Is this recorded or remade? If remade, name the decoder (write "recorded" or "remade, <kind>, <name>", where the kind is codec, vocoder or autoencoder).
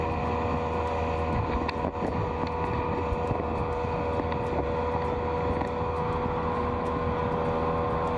recorded